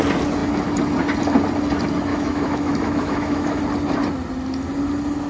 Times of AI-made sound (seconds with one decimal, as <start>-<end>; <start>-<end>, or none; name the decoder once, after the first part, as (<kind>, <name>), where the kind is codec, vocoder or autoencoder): 2.1-3.6 (autoencoder, DAC-VAE)